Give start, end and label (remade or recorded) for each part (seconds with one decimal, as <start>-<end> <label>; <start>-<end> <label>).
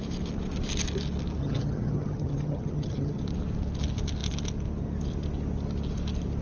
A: 0.0-1.4 recorded; 1.4-3.2 remade; 3.2-6.4 recorded